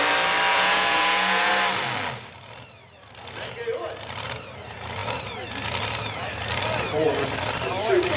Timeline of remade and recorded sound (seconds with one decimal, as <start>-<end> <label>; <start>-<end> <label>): 0.0-0.5 recorded; 0.5-1.5 remade; 1.5-8.2 recorded